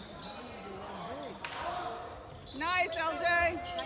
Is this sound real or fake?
real